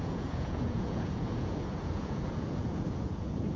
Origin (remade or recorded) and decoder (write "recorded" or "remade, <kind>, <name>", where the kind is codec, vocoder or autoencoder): remade, vocoder, Vocos